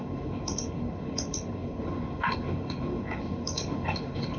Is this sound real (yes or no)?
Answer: no